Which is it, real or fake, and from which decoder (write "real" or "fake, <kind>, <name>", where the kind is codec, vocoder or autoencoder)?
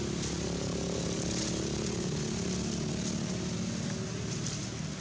real